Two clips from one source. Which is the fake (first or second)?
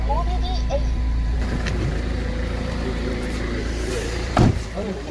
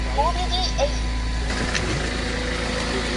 first